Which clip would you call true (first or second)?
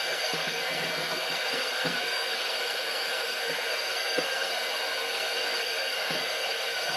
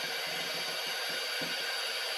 second